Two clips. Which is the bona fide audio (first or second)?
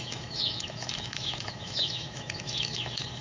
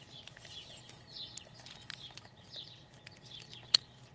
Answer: second